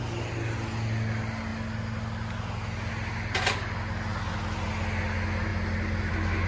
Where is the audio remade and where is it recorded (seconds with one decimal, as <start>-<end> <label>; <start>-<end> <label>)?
0.0-6.5 recorded